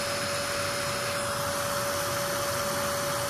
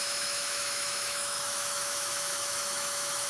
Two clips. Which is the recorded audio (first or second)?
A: first